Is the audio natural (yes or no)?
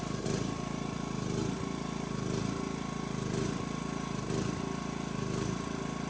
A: yes